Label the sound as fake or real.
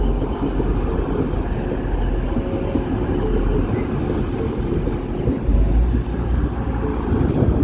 real